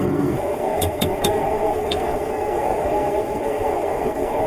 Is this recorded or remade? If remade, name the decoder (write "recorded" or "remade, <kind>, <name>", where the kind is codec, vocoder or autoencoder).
remade, codec, SNAC